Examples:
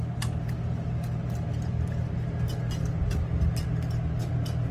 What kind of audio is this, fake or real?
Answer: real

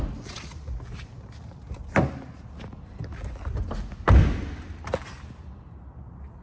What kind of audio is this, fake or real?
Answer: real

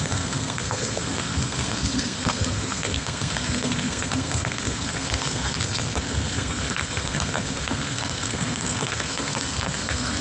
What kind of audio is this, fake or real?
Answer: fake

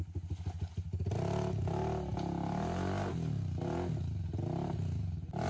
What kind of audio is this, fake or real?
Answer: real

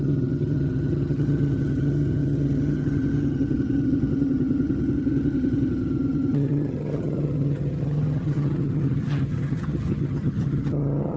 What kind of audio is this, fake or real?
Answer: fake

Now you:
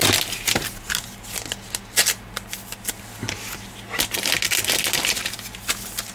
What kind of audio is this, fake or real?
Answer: real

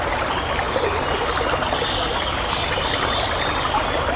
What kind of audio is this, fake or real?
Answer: real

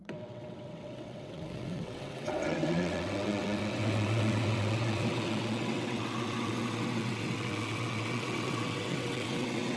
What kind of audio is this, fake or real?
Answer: fake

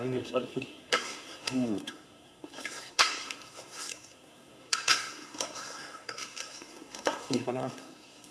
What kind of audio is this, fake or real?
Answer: fake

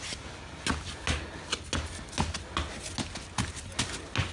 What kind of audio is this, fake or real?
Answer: real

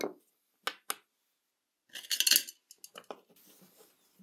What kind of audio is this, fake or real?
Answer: real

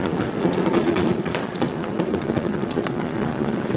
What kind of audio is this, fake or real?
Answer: fake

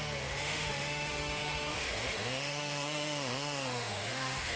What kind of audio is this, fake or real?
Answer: fake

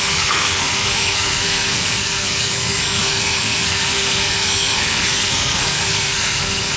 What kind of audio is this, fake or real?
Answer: fake